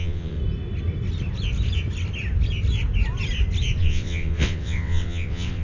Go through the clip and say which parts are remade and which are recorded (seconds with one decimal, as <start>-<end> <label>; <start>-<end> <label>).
0.0-0.4 remade; 0.4-3.8 recorded; 3.8-5.6 remade